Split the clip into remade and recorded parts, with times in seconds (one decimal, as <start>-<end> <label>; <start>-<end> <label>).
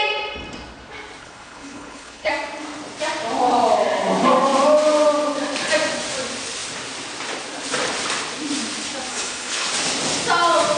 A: 0.0-1.2 recorded; 1.2-2.3 remade; 2.3-9.1 recorded; 9.1-9.7 remade; 9.7-10.8 recorded